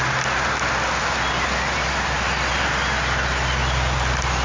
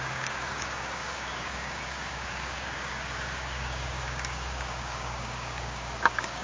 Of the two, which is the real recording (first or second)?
first